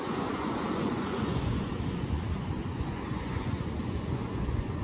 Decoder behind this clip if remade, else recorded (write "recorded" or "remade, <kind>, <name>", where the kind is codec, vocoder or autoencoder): remade, vocoder, Vocos